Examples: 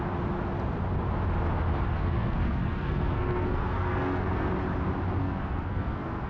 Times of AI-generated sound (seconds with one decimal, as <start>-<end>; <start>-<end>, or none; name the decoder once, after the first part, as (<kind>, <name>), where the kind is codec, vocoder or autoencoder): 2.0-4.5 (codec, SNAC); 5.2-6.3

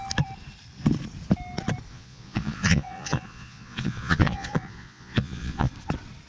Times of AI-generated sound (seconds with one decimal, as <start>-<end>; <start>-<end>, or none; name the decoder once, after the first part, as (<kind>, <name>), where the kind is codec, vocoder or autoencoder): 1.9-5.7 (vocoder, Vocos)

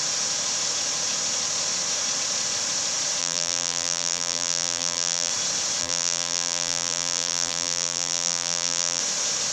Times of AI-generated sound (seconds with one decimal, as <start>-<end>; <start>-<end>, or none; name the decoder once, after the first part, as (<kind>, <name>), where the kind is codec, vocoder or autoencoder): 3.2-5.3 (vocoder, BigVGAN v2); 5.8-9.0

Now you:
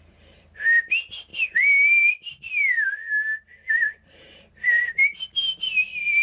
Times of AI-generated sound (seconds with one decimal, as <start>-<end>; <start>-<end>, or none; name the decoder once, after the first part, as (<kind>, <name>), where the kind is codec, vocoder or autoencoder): 0.0-1.3 (vocoder, BigVGAN v2); 3.7-6.2

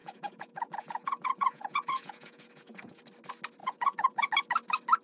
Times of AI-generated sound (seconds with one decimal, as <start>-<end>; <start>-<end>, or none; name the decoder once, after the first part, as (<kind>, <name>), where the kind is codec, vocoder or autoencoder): 0.0-3.0 (vocoder, Vocos); 3.6-4.3

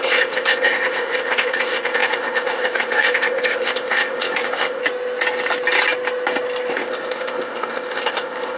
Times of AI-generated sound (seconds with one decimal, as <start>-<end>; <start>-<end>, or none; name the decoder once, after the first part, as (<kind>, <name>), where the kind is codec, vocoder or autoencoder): 0.0-4.8 (codec, ZipCodec); 6.7-8.6